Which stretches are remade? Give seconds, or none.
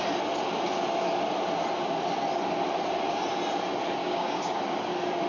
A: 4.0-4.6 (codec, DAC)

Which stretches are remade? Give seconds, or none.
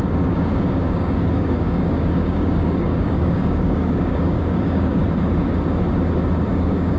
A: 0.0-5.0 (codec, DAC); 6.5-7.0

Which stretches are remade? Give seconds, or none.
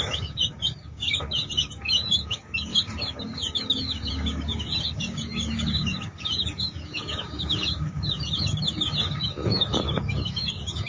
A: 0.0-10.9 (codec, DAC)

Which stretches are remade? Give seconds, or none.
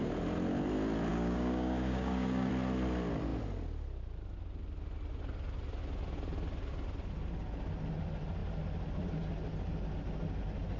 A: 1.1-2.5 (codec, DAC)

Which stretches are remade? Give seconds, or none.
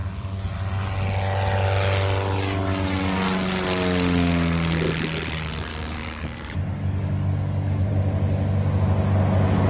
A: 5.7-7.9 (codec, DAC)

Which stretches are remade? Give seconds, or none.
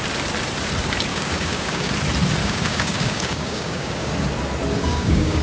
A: 1.1-1.9 (codec, DAC); 2.4-4.1; 4.9-5.4